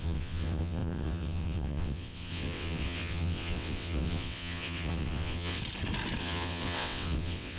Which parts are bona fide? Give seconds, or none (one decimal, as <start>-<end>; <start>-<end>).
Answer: 5.6-6.2